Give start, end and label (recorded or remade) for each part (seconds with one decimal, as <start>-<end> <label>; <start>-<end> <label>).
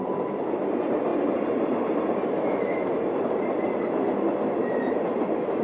0.0-5.6 recorded